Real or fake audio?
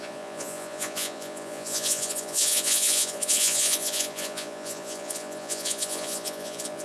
fake